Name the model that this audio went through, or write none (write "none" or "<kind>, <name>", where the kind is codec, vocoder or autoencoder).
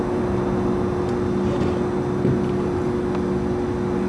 none